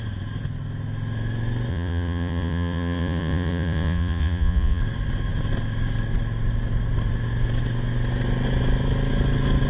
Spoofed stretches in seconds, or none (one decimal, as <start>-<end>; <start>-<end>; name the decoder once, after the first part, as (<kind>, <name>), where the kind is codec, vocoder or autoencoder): 1.7-4.8 (vocoder, Vocos)